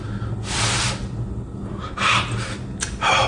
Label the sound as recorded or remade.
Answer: recorded